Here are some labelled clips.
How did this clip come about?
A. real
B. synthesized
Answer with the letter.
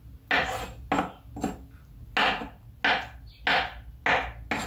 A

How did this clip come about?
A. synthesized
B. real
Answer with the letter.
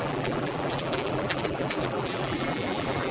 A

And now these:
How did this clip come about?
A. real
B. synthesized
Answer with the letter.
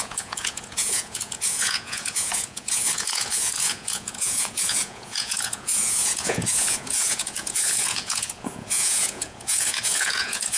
B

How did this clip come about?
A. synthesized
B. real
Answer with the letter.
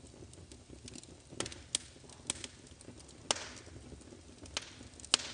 B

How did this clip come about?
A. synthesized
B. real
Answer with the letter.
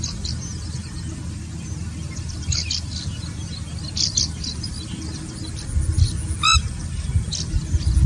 B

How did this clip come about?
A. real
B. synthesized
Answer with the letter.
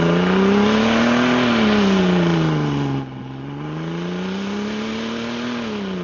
A